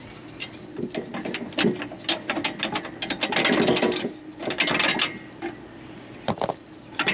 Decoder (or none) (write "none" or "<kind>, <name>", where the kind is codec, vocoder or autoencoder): none